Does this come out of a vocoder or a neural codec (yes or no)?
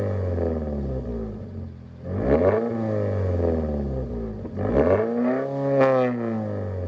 no